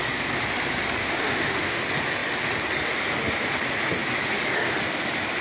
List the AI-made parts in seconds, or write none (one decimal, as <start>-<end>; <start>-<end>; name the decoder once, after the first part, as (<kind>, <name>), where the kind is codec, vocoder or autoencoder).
1.0-1.8 (autoencoder, DAC-VAE)